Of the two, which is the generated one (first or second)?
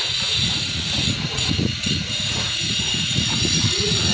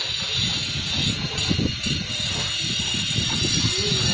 first